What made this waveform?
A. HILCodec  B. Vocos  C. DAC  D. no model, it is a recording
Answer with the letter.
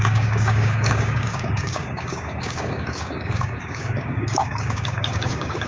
C